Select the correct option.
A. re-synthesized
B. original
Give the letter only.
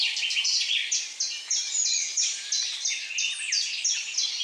B